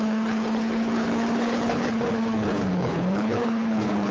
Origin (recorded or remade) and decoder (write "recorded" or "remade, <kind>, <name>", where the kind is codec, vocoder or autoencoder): remade, codec, HILCodec